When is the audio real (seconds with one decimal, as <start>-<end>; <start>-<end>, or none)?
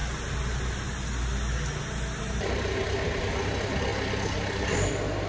0.0-5.3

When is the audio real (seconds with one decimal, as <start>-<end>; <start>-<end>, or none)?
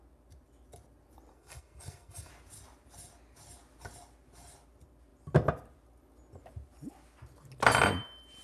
0.0-1.3; 2.3-8.4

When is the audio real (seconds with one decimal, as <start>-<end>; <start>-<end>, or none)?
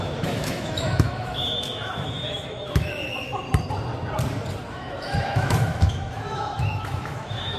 3.3-4.7